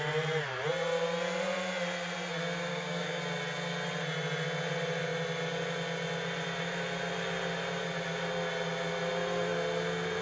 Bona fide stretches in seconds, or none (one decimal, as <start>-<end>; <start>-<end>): 0.0-2.7; 3.2-10.2